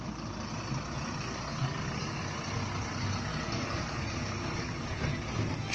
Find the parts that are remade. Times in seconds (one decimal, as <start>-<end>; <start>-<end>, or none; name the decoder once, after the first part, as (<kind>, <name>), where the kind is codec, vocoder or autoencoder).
1.5-2.2 (codec, DAC); 3.3-5.0